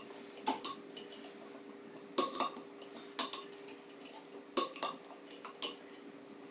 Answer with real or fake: real